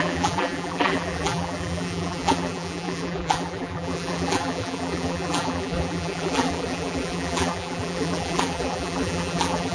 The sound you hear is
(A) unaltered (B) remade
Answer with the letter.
B